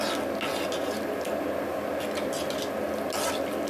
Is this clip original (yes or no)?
yes